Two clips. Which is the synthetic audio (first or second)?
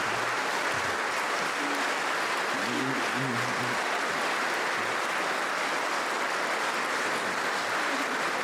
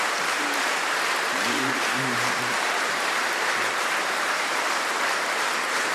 second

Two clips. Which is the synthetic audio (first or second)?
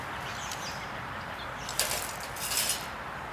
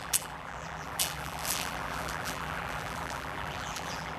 second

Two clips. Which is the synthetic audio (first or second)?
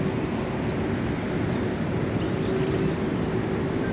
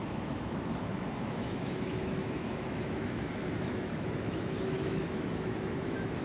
second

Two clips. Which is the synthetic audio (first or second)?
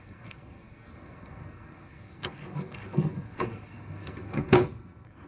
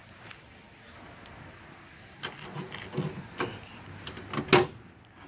first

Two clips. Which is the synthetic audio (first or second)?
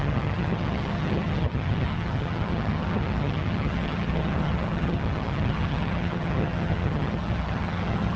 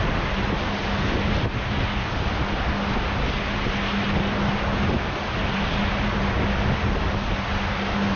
first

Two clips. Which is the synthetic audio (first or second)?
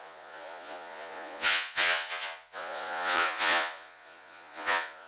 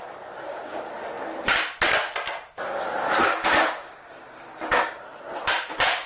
first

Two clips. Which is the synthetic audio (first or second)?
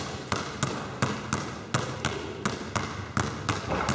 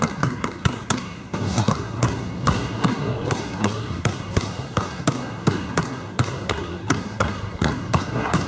second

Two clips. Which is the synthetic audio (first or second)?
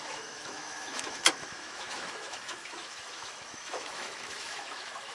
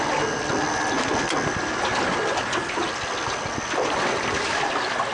first